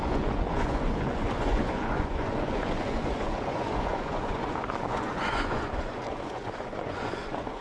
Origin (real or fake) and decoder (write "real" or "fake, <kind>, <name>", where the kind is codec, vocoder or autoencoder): fake, vocoder, Vocos